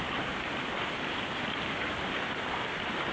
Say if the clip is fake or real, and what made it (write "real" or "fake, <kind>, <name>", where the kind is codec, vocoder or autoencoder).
real